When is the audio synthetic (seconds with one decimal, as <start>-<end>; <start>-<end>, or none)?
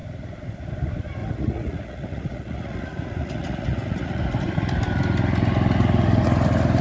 1.2-4.2